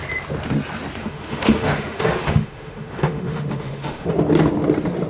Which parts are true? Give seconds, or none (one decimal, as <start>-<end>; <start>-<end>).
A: 0.0-1.0; 4.1-5.1